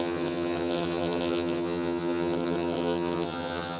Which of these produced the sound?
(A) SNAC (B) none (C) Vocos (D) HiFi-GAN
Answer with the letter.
D